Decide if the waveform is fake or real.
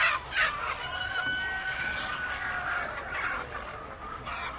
real